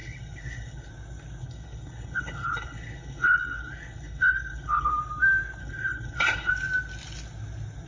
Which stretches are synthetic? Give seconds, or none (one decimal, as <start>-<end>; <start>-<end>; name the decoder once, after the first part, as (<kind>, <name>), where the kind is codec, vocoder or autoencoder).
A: 0.0-0.9 (codec, HILCodec); 1.4-4.9; 5.6-6.5